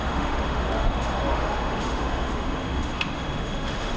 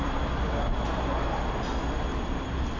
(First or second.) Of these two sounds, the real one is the second